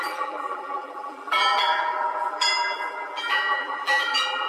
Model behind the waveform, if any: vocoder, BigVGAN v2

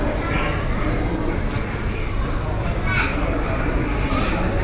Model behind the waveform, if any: none